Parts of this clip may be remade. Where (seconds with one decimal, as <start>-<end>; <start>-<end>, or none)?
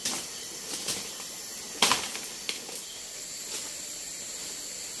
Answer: 0.0-0.8; 1.5-4.4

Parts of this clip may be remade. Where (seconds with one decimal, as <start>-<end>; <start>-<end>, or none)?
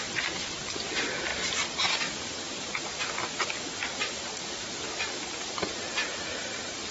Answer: 1.3-5.4; 6.0-6.9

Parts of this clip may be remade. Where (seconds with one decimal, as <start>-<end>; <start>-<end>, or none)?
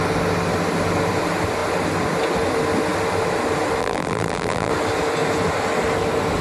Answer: 3.8-4.7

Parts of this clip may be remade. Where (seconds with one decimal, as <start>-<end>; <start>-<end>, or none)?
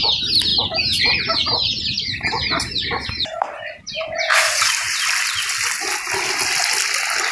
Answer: 0.5-3.9; 4.3-5.0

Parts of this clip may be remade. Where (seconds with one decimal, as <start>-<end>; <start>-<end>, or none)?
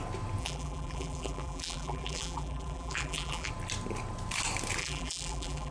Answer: 0.4-3.5; 4.8-5.7